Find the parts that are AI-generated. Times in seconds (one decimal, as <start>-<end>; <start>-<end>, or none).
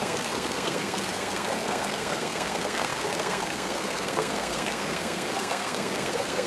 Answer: 0.0-6.5